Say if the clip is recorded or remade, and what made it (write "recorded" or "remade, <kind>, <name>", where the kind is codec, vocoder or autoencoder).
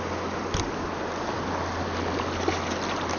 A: recorded